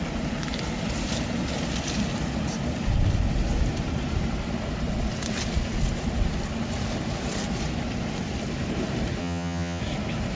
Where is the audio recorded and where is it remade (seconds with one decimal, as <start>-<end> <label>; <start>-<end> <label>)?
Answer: 0.0-9.2 recorded; 9.2-9.8 remade; 9.8-10.4 recorded